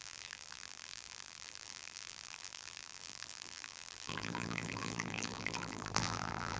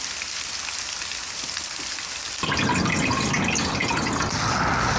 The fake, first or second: first